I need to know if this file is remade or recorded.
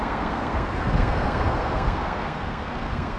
remade